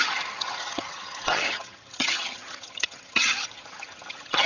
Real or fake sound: fake